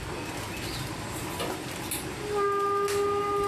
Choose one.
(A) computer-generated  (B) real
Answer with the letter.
B